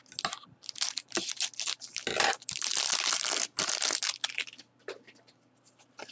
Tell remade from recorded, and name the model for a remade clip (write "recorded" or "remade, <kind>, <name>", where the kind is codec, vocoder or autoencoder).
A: recorded